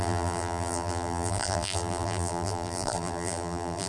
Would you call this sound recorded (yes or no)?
no